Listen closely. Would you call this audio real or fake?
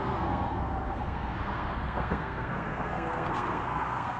fake